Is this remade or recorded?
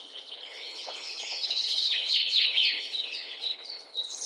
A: remade